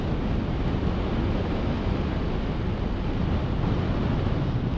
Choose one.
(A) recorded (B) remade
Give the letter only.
A